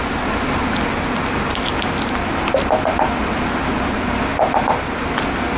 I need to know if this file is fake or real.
real